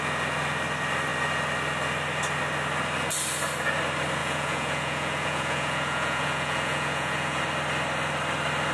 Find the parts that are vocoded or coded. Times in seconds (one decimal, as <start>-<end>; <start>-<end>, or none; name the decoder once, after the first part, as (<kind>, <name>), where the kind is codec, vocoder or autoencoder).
4.2-7.4 (vocoder, Vocos)